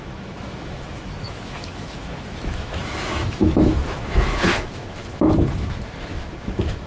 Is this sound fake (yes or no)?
yes